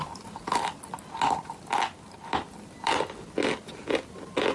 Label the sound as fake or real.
real